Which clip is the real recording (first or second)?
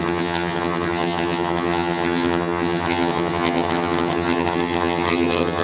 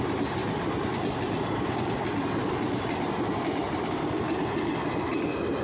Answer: second